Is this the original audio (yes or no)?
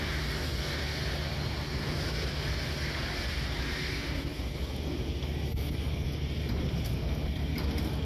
yes